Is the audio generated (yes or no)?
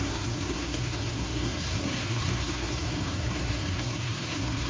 yes